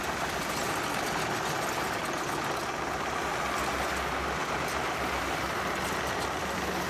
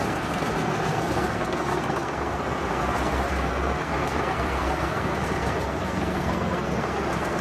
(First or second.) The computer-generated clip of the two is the second